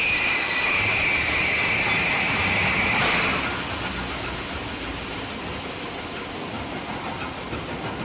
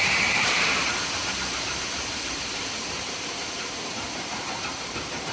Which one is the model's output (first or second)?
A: second